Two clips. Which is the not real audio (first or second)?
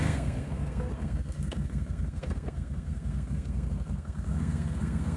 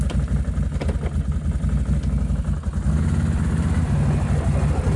first